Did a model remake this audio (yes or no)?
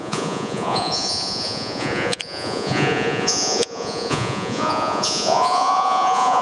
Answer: yes